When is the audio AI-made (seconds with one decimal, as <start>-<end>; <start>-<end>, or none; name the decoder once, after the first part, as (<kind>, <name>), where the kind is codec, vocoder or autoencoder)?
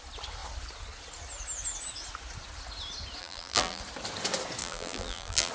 3.2-3.8 (vocoder, BigVGAN v2); 4.6-5.5